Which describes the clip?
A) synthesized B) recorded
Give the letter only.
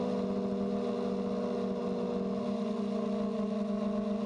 B